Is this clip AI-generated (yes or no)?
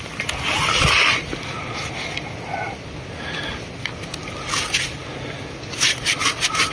no